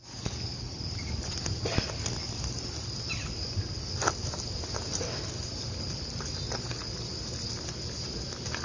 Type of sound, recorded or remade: recorded